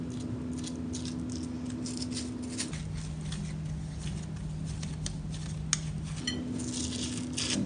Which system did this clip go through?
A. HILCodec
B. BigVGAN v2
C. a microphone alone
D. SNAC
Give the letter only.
C